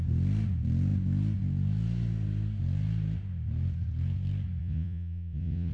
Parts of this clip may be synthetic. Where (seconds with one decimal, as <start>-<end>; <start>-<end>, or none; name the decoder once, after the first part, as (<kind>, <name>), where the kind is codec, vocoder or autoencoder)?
4.6-5.7 (vocoder, Vocos)